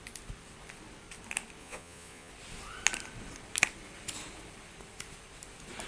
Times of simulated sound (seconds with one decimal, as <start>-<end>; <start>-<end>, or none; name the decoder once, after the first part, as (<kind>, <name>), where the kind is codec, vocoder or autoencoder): 1.6-2.3 (vocoder, Vocos)